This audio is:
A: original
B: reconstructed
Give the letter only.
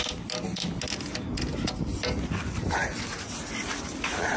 A